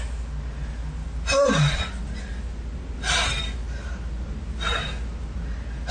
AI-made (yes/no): no